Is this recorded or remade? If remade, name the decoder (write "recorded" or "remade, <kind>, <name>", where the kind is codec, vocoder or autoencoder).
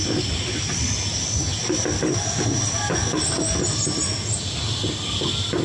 recorded